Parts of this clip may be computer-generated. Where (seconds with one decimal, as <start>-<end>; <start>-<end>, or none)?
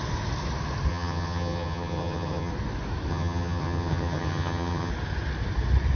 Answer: 0.9-2.5; 3.1-4.9